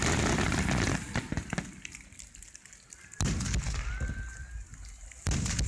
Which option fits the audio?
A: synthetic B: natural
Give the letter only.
B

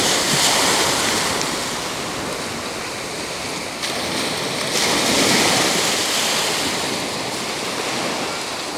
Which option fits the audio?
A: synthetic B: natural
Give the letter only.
B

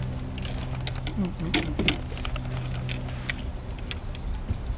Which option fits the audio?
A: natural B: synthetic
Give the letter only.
A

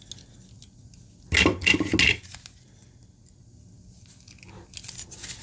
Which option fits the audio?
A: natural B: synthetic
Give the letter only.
A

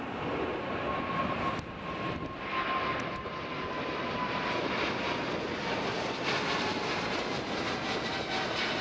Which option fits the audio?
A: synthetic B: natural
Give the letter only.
B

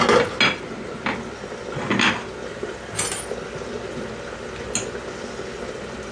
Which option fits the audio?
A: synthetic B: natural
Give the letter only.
B